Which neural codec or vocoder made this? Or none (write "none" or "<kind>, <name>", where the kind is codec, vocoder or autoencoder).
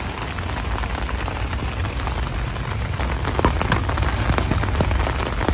none